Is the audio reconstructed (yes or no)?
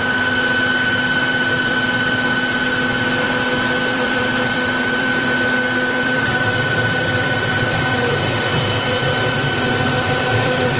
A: yes